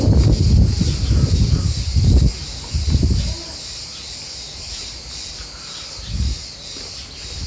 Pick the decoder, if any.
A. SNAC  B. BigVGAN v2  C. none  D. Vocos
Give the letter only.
C